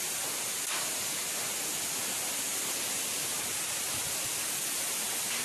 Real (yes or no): yes